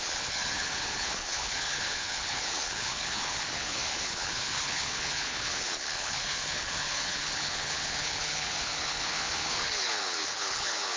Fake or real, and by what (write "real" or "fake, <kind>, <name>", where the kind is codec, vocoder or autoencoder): fake, codec, HILCodec